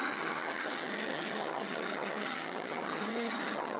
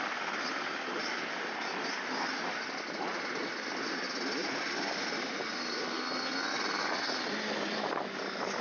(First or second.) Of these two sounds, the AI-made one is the first